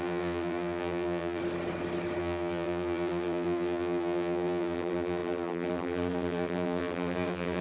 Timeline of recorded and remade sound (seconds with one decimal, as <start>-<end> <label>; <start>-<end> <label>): 0.0-1.4 remade; 1.4-2.2 recorded; 2.2-7.6 remade